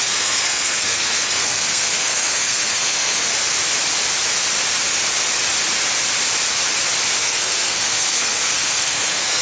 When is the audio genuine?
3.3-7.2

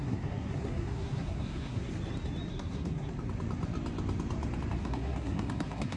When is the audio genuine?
1.9-2.5; 3.1-4.8

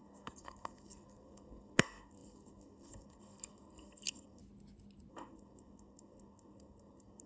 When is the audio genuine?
4.4-5.1

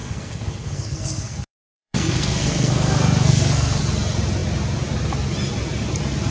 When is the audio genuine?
3.8-6.3

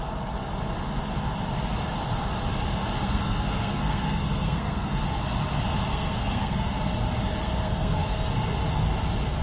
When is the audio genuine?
0.0-3.0; 5.0-5.9; 6.7-7.4; 8.3-9.4

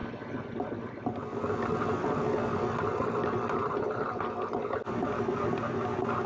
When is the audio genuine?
0.0-6.3

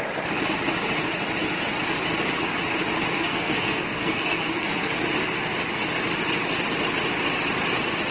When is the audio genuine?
0.0-3.1; 4.9-8.1

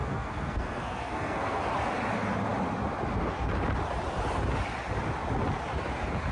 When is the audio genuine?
1.6-6.3